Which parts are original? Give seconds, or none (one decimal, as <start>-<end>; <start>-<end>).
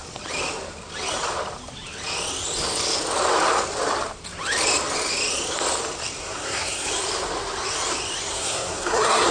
0.0-6.2; 6.9-8.3